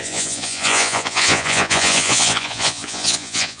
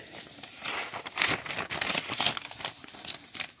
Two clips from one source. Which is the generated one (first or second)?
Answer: first